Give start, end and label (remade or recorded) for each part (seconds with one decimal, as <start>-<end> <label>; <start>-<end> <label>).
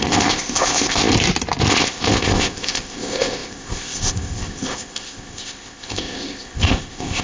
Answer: 0.0-1.1 remade; 1.1-1.7 recorded; 1.7-7.2 remade